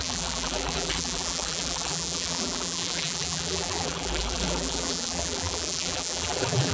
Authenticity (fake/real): fake